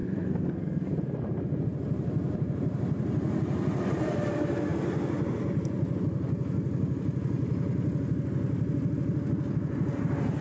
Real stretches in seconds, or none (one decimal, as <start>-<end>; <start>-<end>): 0.9-10.4

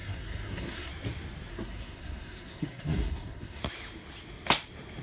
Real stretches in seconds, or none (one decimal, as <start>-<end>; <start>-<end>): 0.9-1.5; 3.6-5.0

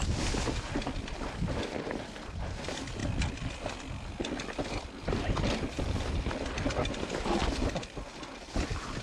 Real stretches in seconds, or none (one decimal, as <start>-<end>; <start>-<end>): 0.0-9.0

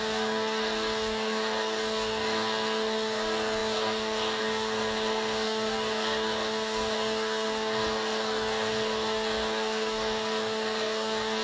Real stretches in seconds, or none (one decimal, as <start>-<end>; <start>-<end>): none

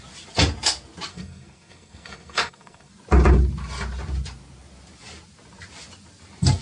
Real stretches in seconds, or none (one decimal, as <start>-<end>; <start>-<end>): 0.0-1.1; 2.9-6.6

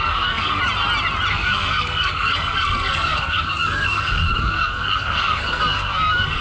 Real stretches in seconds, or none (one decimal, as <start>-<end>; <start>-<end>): 0.6-1.3

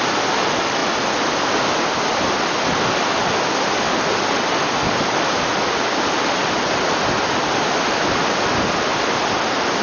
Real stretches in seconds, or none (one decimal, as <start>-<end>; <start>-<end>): 0.0-9.8

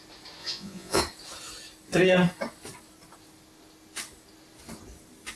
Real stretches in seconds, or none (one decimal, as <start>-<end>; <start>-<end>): 0.0-0.4; 1.0-5.4